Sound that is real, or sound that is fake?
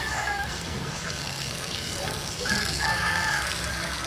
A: fake